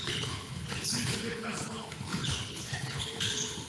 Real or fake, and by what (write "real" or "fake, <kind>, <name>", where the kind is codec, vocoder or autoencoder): fake, codec, HILCodec